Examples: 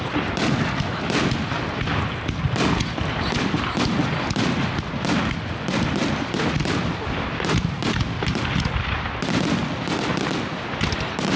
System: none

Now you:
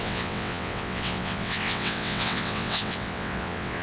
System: vocoder, WaveNeXt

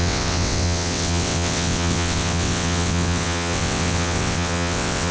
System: vocoder, WaveNeXt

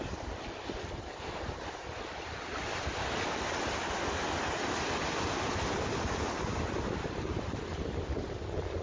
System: none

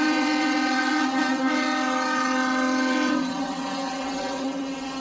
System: vocoder, WaveNeXt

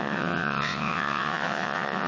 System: vocoder, WaveNeXt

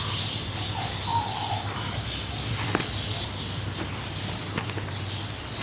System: none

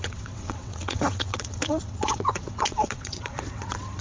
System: vocoder, WaveNeXt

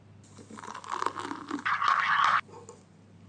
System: none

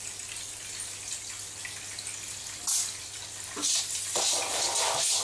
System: none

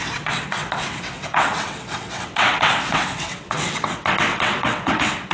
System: vocoder, WaveNeXt